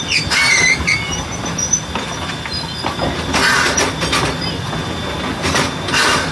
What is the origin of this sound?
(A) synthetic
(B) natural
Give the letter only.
B